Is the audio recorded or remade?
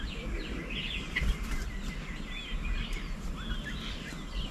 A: recorded